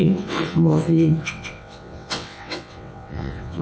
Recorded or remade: remade